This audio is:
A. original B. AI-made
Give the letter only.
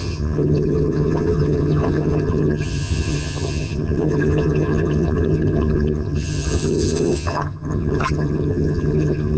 B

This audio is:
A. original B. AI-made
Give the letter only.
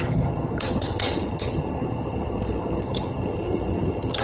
B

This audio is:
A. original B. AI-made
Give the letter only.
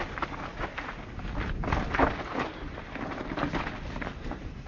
A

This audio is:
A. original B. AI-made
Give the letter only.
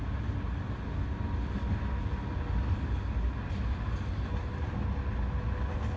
A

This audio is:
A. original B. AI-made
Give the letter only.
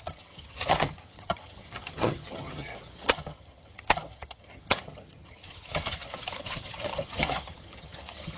B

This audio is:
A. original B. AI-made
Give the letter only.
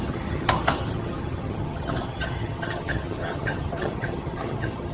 B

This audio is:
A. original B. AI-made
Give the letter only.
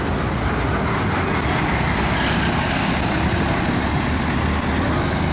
A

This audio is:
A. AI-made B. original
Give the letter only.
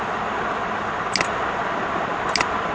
B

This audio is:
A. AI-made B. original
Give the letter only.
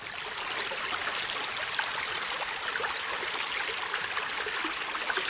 B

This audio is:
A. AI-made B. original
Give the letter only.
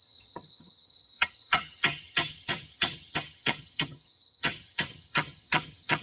A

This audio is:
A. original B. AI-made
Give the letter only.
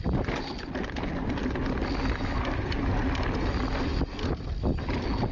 A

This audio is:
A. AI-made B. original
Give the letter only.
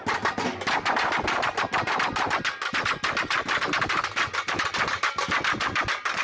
B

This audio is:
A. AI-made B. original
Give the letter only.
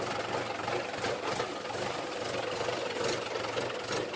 B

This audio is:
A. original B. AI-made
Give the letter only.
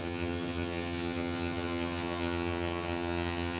B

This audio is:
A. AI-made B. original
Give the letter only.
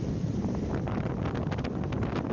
B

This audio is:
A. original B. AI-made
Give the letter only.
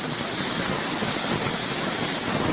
A